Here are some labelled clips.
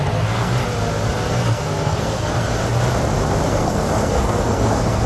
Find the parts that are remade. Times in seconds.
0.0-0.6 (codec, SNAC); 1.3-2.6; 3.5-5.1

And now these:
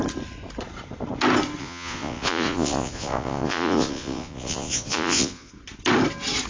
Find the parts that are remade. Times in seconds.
1.6-5.5 (vocoder, Vocos)

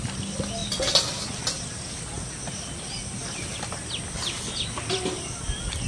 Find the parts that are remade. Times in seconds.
none